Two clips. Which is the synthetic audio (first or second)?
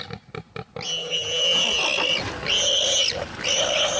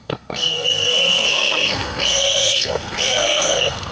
second